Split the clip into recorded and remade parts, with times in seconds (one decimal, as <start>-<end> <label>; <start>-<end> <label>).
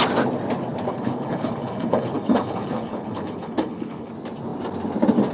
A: 0.0-0.9 recorded; 0.9-4.1 remade; 4.1-5.3 recorded